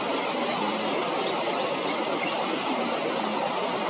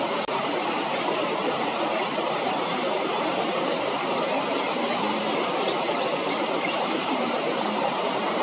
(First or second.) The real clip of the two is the first